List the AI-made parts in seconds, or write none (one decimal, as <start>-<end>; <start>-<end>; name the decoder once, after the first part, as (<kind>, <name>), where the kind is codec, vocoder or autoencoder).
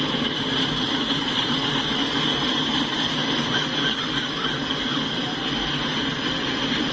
none